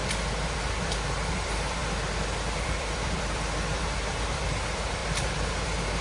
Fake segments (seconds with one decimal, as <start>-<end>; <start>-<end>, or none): 0.0-1.8; 2.5-6.0